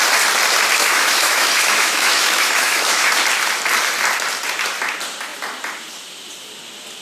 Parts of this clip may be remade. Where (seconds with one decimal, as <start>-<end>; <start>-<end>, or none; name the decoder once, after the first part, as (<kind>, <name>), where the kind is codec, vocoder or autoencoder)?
0.8-3.1 (autoencoder, DAC-VAE)